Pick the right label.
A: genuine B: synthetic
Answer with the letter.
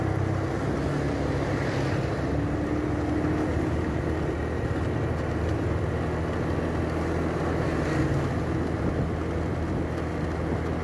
A